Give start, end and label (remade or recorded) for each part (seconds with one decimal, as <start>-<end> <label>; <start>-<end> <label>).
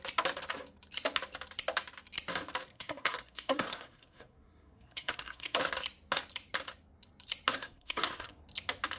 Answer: 0.0-2.7 recorded; 2.7-5.6 remade; 5.6-7.5 recorded; 7.5-8.4 remade; 8.4-9.0 recorded